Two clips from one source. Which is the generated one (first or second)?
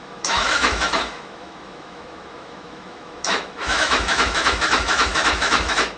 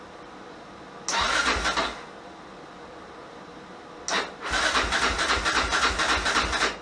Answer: first